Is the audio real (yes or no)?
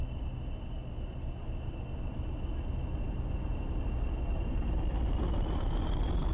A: yes